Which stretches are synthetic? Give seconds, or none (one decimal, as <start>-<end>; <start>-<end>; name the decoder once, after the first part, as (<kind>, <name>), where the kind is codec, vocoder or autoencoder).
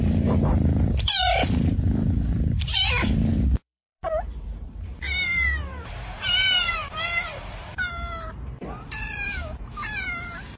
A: 0.0-10.6 (vocoder, BigVGAN v2)